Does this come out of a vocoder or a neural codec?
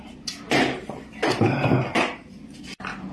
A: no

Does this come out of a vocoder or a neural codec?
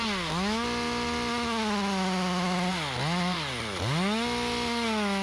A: no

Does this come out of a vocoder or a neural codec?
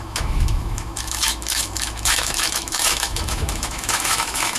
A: yes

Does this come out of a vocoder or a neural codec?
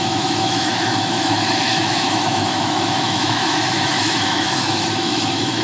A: yes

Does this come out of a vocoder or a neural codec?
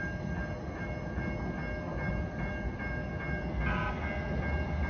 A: no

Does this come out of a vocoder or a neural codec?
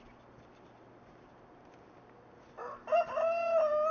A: no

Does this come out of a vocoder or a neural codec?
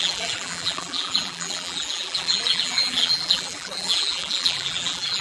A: yes